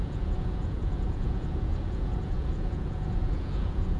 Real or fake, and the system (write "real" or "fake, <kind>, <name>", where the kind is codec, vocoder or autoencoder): fake, vocoder, Vocos